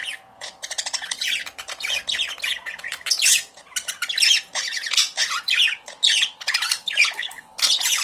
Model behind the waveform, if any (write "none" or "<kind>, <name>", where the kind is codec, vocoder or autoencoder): vocoder, Vocos